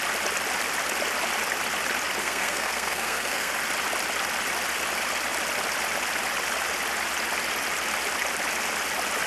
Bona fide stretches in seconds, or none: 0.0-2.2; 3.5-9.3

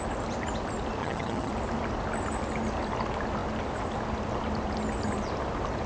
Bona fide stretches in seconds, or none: 0.0-1.0; 1.5-5.9

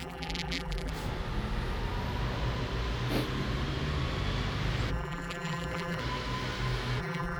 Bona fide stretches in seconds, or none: 0.9-4.9; 6.0-7.0

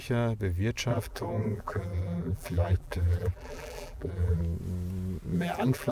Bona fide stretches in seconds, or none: 0.0-0.9; 4.4-5.3

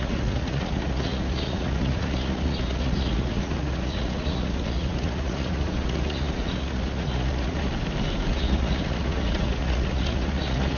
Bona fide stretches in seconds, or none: 7.7-8.3

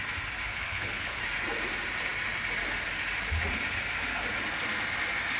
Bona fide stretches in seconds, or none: 0.0-0.5; 1.2-5.4

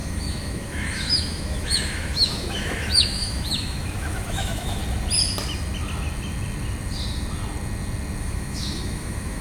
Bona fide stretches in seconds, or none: 4.8-8.2